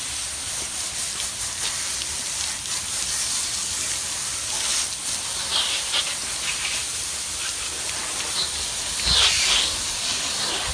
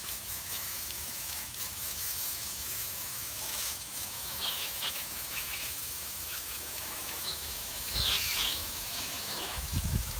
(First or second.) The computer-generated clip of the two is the second